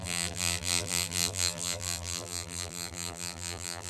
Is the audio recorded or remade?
remade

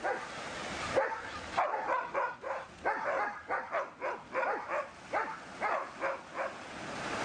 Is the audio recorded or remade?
recorded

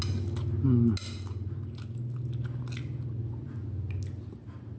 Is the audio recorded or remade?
recorded